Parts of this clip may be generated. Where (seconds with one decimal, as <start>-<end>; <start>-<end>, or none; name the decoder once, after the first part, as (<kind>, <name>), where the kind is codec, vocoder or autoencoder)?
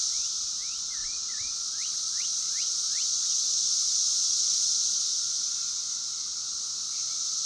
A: 1.0-5.5 (vocoder, Vocos)